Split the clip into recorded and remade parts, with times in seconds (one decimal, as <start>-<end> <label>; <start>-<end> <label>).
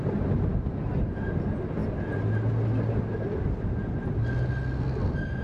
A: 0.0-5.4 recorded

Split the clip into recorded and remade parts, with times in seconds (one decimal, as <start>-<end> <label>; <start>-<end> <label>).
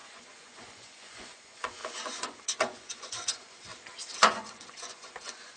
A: 0.0-3.7 remade; 3.7-4.2 recorded; 4.2-5.6 remade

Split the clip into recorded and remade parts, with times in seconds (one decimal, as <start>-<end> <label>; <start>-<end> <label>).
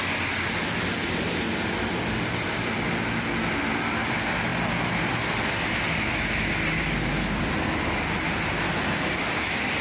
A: 0.0-9.8 recorded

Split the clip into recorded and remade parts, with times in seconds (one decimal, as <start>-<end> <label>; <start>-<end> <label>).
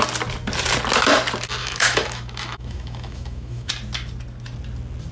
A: 0.0-1.6 recorded; 1.6-3.7 remade; 3.7-5.1 recorded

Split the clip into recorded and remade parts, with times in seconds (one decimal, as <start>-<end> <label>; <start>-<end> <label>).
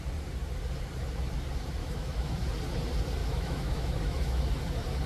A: 0.0-1.8 recorded; 1.8-2.5 remade; 2.5-3.2 recorded; 3.2-4.4 remade; 4.4-5.1 recorded